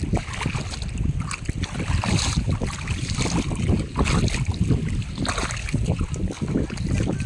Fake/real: real